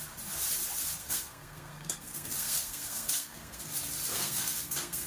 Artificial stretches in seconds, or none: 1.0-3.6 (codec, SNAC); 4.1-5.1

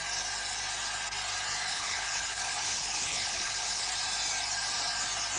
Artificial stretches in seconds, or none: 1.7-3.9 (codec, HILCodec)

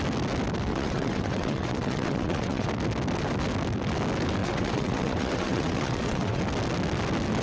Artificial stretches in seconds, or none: 0.7-2.7 (vocoder, WaveNeXt); 4.4-6.4